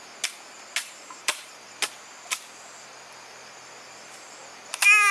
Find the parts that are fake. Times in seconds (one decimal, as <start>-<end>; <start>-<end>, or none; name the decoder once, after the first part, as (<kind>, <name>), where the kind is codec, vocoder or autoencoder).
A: 0.8-1.7 (vocoder, BigVGAN v2)